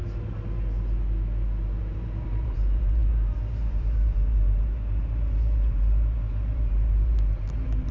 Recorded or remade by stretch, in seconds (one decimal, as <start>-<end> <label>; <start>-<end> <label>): 0.0-1.8 recorded; 1.8-7.9 remade